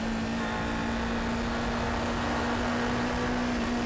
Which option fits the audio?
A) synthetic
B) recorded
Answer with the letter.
B